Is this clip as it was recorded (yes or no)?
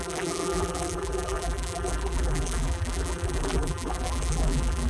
no